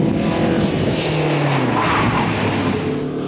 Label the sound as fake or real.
real